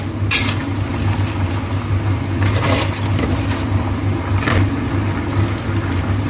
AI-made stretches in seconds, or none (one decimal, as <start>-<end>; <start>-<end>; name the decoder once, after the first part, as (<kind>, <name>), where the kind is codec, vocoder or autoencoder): none